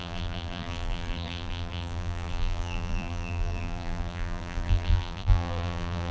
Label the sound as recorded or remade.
remade